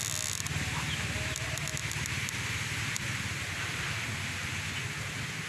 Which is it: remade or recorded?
recorded